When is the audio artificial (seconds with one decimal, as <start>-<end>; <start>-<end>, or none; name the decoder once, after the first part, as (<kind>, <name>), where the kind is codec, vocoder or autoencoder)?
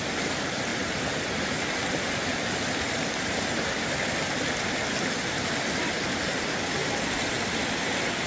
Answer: none